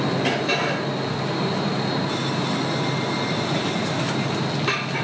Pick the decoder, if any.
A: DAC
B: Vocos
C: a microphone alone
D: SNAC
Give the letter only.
C